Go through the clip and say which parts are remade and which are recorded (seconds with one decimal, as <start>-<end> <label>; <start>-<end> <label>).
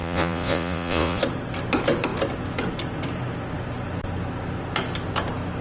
0.0-1.2 remade; 1.2-5.6 recorded